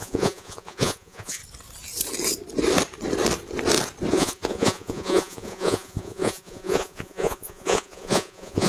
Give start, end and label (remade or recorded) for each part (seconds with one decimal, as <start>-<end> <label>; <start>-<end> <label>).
0.0-1.4 remade; 1.4-4.1 recorded; 4.1-8.7 remade